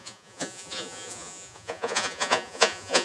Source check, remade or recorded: remade